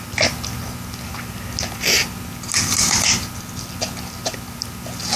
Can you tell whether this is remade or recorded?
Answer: recorded